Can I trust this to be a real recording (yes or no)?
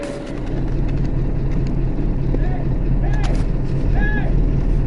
yes